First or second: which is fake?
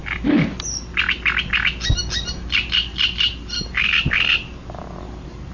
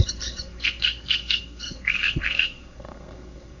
second